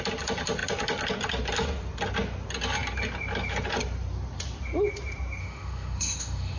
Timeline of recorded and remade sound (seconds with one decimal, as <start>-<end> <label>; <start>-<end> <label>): 0.0-5.4 recorded; 5.4-6.6 remade